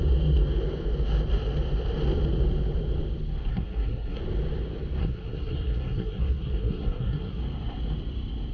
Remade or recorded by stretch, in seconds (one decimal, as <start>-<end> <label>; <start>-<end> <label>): 0.0-3.5 recorded; 3.5-4.2 remade; 4.2-5.0 recorded; 5.0-7.4 remade; 7.4-8.5 recorded